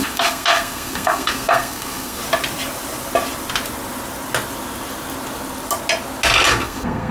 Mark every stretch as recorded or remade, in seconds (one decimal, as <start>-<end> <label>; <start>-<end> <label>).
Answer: 0.0-2.2 remade; 2.2-6.5 recorded; 6.5-7.1 remade